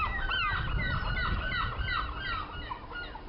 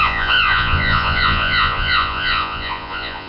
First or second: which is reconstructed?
second